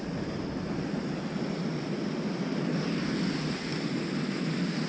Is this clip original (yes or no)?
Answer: yes